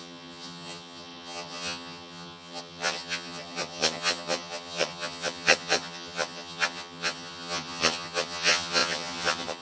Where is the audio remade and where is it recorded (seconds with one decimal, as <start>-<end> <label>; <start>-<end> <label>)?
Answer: 0.0-9.6 remade